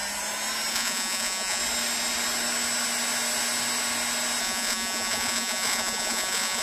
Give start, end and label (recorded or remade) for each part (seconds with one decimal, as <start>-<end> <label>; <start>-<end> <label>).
0.0-0.7 recorded; 0.7-1.6 remade; 1.6-4.4 recorded; 4.4-6.6 remade